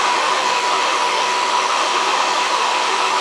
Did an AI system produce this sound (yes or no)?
yes